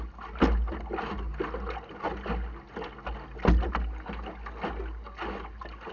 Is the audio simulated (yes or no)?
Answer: no